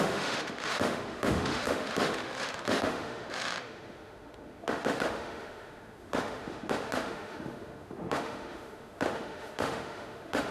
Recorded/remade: remade